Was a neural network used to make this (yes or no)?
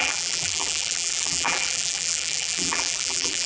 yes